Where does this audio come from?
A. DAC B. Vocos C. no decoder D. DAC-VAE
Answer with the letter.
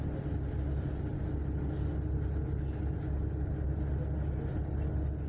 C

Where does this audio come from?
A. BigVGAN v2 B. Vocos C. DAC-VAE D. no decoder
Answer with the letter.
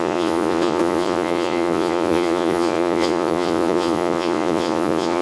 B